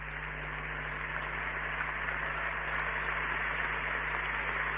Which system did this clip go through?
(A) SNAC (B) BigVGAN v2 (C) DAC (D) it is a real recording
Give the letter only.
D